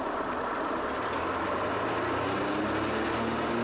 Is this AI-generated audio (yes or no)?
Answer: no